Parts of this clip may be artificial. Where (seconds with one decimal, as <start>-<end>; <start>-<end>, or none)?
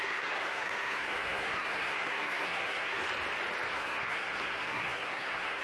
0.0-3.0; 3.7-5.6